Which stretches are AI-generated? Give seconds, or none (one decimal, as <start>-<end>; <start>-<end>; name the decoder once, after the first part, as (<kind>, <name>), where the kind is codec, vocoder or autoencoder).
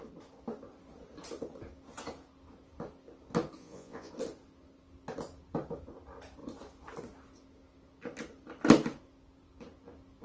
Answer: 3.6-4.1 (vocoder, Vocos)